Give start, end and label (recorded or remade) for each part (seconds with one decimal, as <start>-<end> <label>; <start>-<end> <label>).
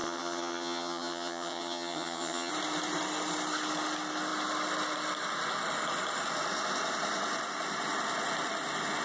0.0-2.5 remade; 2.5-9.0 recorded